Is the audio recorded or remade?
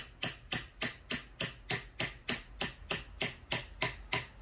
recorded